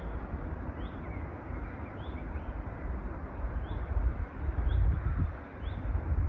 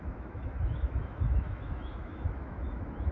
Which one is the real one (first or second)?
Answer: first